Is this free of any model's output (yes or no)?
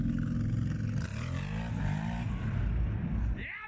yes